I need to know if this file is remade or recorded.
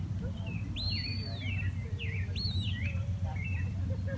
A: recorded